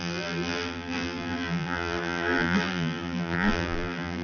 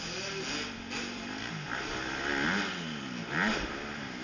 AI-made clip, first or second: first